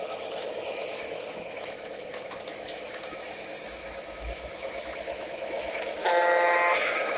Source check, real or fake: fake